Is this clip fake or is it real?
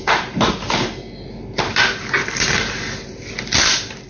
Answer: real